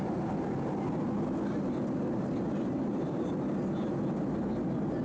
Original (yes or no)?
yes